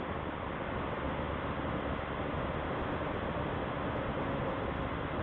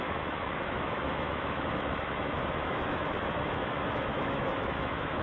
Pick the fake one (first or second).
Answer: second